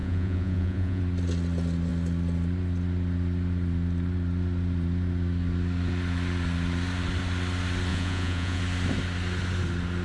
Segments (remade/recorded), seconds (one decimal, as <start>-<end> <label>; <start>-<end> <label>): 0.0-1.0 remade; 1.0-7.9 recorded; 7.9-8.6 remade; 8.6-10.0 recorded